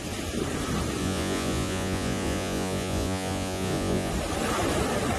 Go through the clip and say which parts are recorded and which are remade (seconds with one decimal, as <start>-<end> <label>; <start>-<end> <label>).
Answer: 0.0-1.0 recorded; 1.0-4.1 remade; 4.1-5.2 recorded